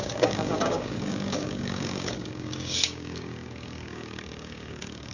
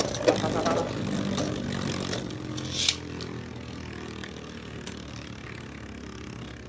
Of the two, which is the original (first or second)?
second